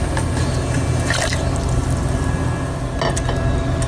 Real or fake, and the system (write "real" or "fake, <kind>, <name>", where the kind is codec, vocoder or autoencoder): real